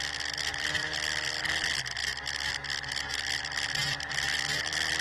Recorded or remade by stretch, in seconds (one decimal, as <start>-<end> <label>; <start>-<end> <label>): 0.0-0.8 recorded; 0.8-1.5 remade; 1.5-2.0 recorded; 2.0-3.1 remade; 3.1-3.8 recorded; 3.8-4.6 remade; 4.6-5.0 recorded